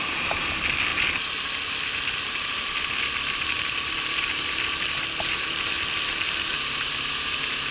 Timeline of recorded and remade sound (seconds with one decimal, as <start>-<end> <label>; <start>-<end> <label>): 0.0-7.7 recorded

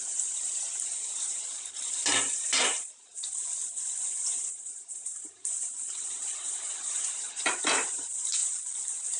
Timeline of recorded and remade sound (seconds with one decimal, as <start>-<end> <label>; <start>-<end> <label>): 0.0-3.1 remade; 3.1-4.4 recorded; 4.4-8.4 remade; 8.4-9.2 recorded

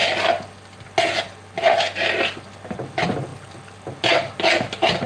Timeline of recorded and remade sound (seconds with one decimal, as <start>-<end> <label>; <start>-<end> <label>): 0.0-5.1 recorded

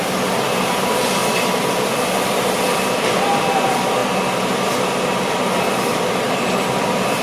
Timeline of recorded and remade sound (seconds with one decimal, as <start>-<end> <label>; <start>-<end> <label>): 0.0-5.9 recorded; 5.9-7.2 remade

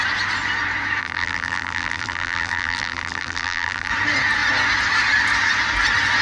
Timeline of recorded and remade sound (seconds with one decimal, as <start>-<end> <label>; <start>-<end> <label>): 0.0-1.0 recorded; 1.0-3.9 remade; 3.9-6.2 recorded

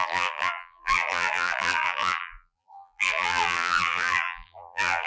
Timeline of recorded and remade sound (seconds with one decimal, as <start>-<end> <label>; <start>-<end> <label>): 0.0-5.1 remade

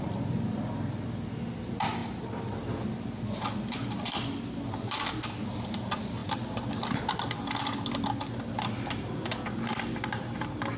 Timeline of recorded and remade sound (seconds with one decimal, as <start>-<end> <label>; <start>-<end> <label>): 0.0-2.0 recorded; 2.0-5.1 remade; 5.1-6.2 recorded; 6.2-6.8 remade; 6.8-10.8 recorded

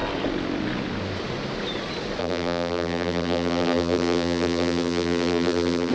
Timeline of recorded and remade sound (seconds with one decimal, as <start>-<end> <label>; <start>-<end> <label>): 0.0-2.2 recorded; 2.2-5.9 remade